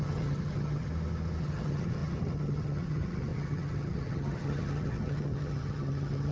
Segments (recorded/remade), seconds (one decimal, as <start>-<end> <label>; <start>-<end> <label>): 0.0-0.9 remade; 0.9-1.4 recorded; 1.4-6.3 remade